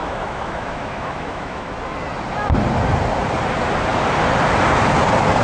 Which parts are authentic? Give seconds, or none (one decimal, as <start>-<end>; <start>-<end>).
1.7-5.4

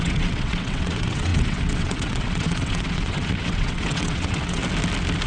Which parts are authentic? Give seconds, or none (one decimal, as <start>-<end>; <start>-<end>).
4.6-5.3